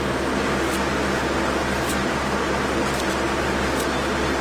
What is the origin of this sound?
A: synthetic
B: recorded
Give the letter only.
B